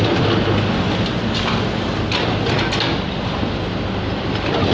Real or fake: real